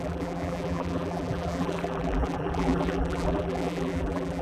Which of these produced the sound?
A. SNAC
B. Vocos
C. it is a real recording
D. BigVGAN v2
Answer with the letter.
D